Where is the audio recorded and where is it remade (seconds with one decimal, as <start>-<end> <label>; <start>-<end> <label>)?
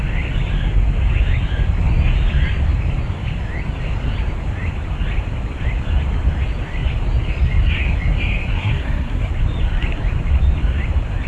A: 0.0-8.5 recorded; 8.5-9.3 remade; 9.3-11.3 recorded